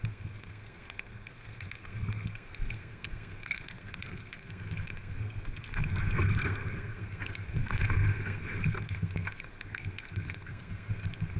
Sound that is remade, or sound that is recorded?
remade